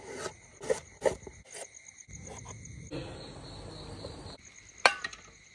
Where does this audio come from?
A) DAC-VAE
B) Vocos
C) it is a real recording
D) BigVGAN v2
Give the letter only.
C